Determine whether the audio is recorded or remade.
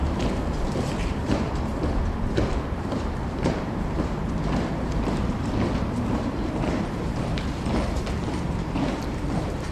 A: remade